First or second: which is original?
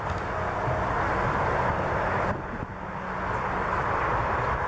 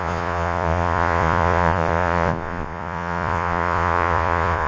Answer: first